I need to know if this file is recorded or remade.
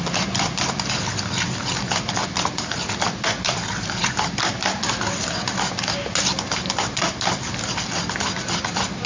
recorded